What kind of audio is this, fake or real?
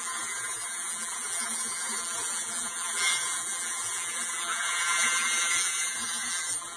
fake